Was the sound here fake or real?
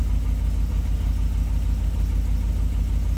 real